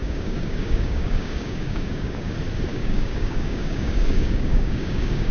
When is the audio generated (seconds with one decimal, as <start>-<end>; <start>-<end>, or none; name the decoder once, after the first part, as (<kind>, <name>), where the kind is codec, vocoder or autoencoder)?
0.0-2.3 (codec, DAC); 2.7-5.3